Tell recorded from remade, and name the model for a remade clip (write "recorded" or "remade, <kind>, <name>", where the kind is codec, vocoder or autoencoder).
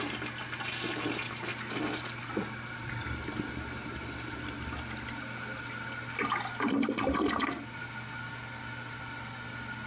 recorded